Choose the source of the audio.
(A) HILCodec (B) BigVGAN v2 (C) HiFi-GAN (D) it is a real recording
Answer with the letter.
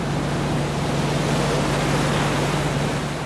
D